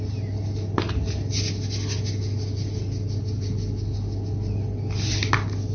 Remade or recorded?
recorded